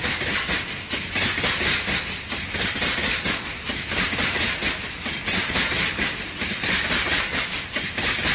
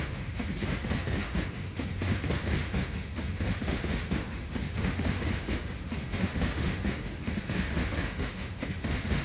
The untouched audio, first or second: first